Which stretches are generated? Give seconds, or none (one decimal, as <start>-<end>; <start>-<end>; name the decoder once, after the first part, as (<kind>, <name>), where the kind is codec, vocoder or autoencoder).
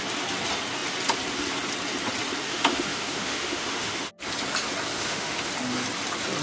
2.5-4.1 (autoencoder, DAC-VAE); 4.9-5.5